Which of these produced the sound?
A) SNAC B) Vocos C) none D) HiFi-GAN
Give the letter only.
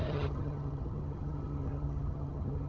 D